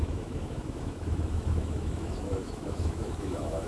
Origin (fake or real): fake